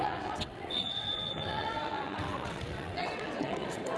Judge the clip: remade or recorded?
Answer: remade